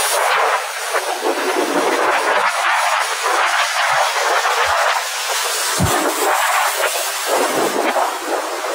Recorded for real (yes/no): yes